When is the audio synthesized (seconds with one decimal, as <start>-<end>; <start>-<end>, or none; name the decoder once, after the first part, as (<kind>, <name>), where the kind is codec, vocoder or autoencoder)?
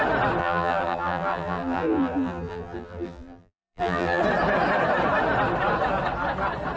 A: 0.4-4.2 (vocoder, BigVGAN v2)